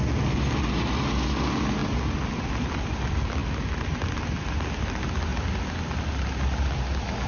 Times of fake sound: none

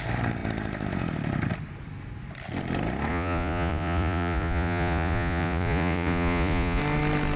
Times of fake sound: 3.1-6.8

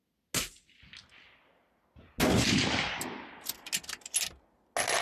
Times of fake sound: none

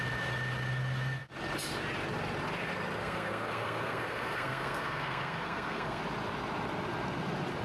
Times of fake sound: 3.0-6.0

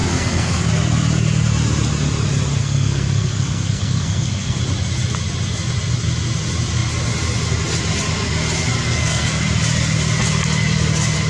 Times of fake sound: 0.0-0.7; 2.6-4.6; 8.9-9.4

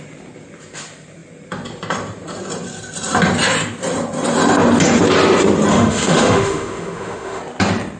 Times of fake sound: 5.7-7.4

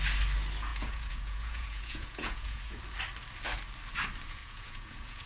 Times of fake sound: 0.7-2.8; 4.4-5.3